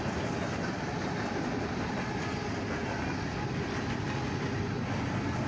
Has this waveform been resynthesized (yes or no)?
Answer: no